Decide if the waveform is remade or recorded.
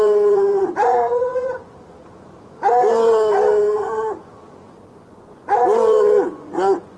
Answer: remade